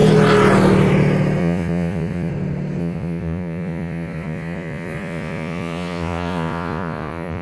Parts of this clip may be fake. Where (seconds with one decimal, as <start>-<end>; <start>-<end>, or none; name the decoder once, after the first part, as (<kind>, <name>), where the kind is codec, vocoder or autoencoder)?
1.4-2.3 (vocoder, Vocos); 2.8-7.4